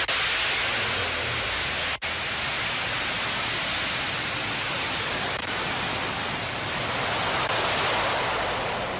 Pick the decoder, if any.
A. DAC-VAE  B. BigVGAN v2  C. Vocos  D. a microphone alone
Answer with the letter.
D